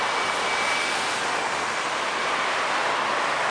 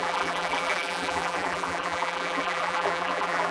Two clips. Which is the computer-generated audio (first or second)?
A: second